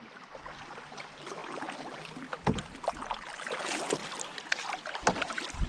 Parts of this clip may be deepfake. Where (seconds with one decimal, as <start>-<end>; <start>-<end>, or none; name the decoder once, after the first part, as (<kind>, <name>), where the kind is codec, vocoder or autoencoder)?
0.0-4.0 (vocoder, BigVGAN v2); 5.0-5.7